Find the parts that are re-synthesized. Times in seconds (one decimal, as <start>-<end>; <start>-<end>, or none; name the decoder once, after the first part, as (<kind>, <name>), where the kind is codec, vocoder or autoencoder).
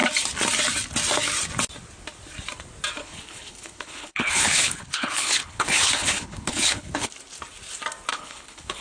3.0-7.1 (codec, HILCodec); 8.1-8.8